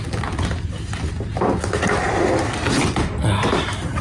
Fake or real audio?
real